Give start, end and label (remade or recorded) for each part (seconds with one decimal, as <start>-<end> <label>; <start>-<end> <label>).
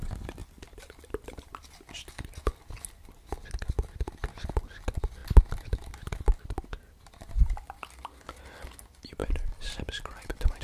0.0-0.4 recorded; 0.4-1.7 remade; 1.7-5.2 recorded; 5.2-8.2 remade; 8.2-9.2 recorded; 9.2-10.6 remade